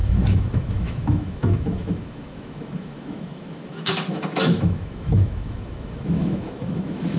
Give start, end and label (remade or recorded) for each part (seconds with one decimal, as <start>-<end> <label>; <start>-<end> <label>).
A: 0.0-7.2 remade